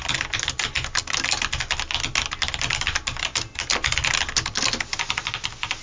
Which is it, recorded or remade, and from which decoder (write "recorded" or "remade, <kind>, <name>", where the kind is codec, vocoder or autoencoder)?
recorded